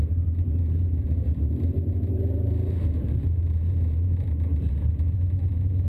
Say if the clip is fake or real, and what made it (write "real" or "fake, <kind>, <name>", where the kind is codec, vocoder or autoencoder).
fake, vocoder, BigVGAN v2